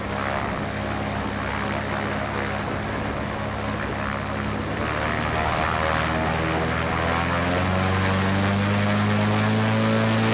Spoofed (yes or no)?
no